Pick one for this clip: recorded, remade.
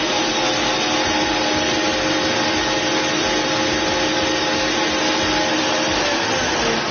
recorded